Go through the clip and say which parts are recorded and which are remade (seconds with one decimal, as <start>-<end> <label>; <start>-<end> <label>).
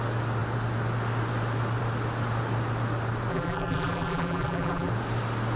0.0-3.3 recorded; 3.3-4.9 remade; 4.9-5.6 recorded